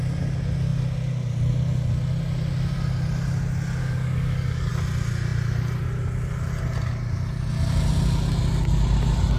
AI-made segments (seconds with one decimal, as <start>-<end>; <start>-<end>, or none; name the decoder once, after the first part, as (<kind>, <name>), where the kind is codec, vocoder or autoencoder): 3.8-4.7 (codec, DAC)